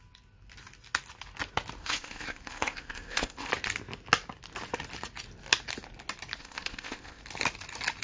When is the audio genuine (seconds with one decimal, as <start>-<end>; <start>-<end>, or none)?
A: 0.0-1.8; 3.5-6.4; 7.2-8.0